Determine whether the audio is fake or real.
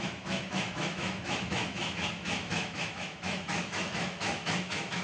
fake